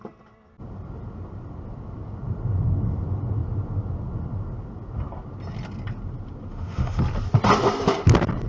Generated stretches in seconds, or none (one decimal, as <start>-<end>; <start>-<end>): 6.5-7.0